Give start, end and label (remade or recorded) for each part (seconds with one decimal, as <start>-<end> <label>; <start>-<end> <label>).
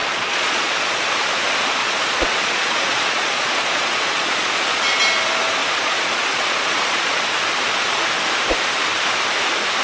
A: 0.0-0.9 remade; 0.9-1.8 recorded; 1.8-4.8 remade; 4.8-5.6 recorded; 5.6-7.2 remade; 7.2-9.8 recorded